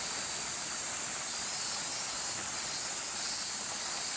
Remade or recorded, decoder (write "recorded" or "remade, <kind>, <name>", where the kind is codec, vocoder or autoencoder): recorded